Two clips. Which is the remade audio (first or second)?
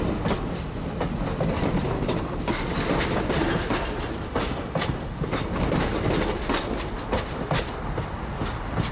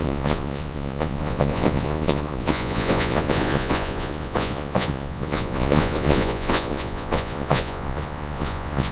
second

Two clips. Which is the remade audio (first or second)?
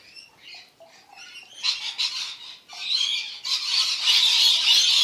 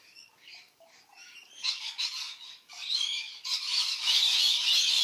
second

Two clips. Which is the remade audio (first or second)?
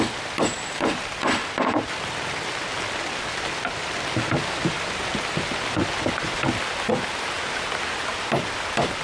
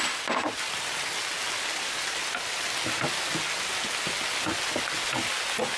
first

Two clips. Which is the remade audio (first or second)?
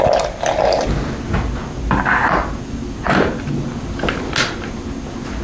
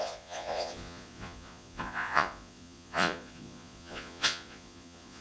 second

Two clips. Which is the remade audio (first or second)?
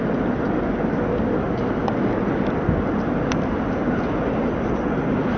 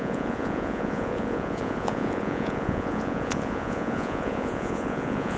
second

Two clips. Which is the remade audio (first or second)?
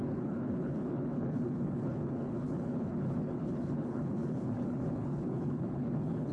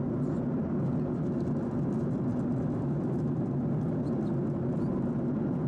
first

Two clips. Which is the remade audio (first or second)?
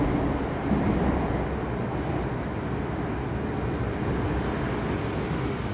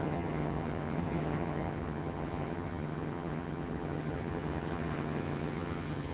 second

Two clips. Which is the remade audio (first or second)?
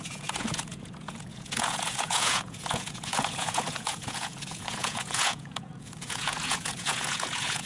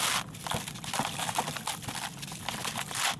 first